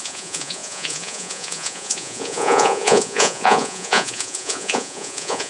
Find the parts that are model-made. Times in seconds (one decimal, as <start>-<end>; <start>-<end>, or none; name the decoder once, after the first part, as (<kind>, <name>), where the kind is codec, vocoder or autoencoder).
0.0-5.5 (vocoder, Vocos)